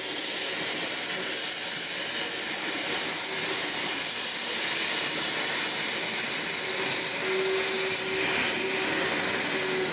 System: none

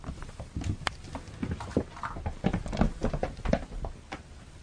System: none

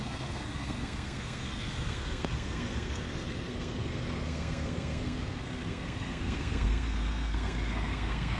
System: codec, SNAC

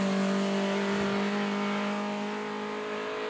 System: none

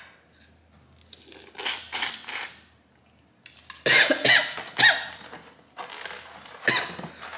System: none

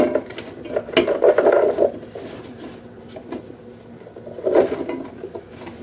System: none